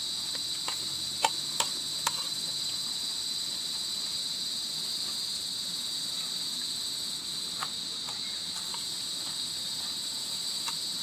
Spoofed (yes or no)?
no